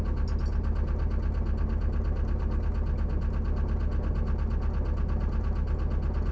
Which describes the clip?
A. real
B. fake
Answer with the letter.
A